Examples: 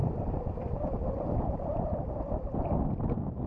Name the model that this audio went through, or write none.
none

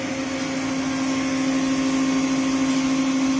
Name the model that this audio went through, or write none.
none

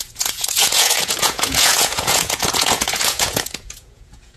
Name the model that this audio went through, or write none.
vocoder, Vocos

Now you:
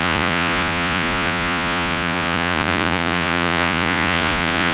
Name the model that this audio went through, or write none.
vocoder, Vocos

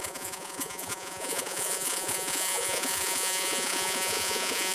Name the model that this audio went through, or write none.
vocoder, Vocos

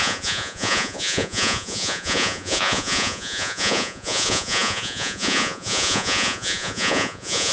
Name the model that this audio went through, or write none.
vocoder, Vocos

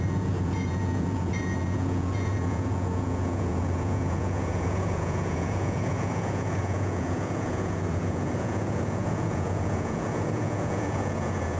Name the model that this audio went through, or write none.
vocoder, Vocos